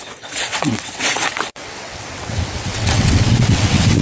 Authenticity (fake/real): fake